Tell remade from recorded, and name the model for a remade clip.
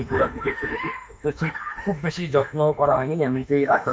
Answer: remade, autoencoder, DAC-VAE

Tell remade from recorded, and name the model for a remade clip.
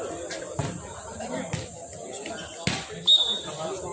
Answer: recorded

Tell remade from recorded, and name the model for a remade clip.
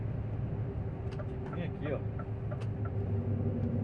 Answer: recorded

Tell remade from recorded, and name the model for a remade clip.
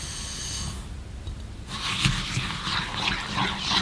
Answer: recorded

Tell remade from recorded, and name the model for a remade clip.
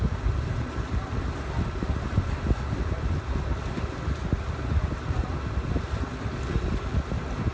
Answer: recorded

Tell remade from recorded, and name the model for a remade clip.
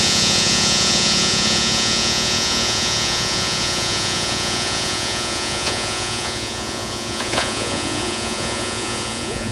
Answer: remade, vocoder, Vocos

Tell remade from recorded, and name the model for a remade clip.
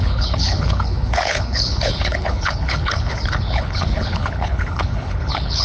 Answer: remade, codec, HILCodec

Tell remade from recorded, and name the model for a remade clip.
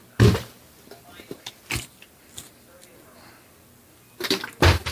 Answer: recorded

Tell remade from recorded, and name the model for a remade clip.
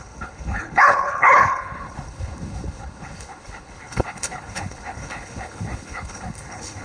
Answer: remade, codec, HILCodec